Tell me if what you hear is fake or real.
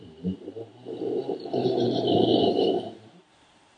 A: fake